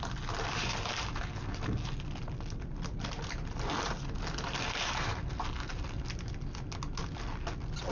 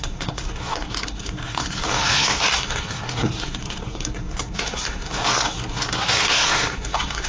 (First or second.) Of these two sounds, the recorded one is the first